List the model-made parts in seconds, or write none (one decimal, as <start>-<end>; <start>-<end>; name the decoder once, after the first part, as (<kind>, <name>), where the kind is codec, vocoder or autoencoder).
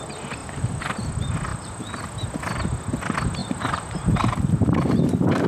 0.4-1.1 (vocoder, BigVGAN v2); 1.5-2.0; 3.4-5.5